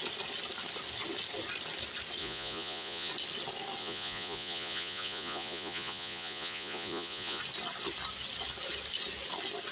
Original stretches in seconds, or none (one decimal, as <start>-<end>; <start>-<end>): 0.0-2.2; 3.1-3.8; 7.4-9.7